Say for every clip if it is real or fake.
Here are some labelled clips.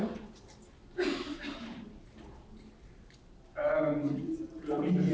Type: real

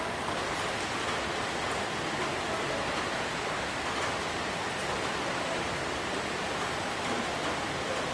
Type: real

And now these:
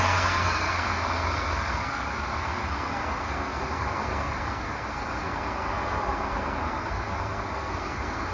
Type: fake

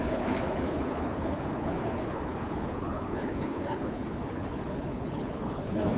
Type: fake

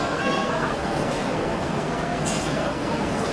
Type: fake